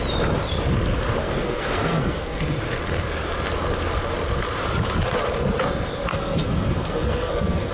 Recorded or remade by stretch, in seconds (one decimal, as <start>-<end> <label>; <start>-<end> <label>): 0.0-1.2 recorded; 1.2-2.4 remade; 2.4-6.1 recorded; 6.1-7.7 remade